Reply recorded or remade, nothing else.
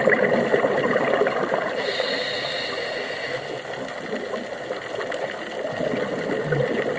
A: recorded